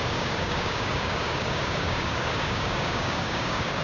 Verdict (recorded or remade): remade